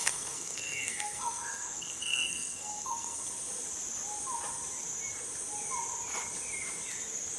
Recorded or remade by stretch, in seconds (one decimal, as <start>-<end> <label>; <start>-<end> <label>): 0.0-3.3 remade; 3.3-7.4 recorded